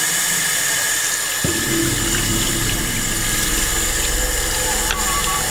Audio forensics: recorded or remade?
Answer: recorded